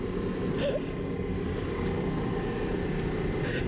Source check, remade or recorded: recorded